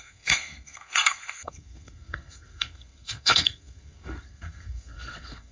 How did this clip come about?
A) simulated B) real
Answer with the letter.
A